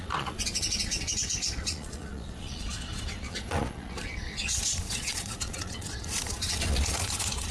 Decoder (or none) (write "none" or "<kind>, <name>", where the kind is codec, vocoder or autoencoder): vocoder, Vocos